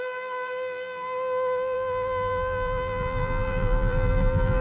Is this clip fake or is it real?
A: fake